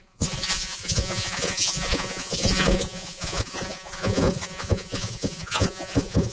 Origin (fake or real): fake